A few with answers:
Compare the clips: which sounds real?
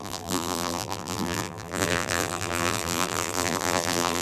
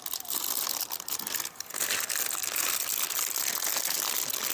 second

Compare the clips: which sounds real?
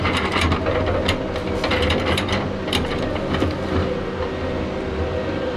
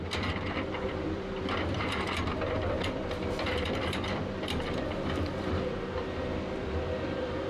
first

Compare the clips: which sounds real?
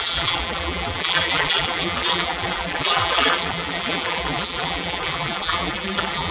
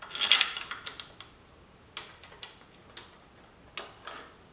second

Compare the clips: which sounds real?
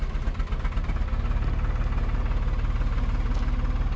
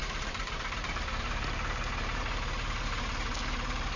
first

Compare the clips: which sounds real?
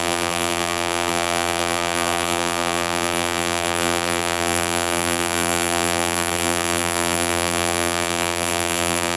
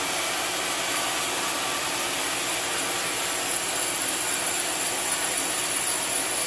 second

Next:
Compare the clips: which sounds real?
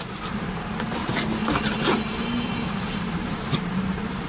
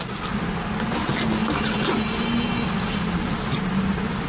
second